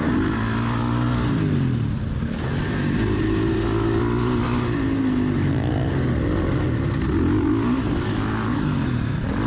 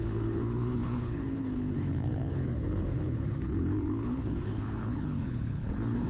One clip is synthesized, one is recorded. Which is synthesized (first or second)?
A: second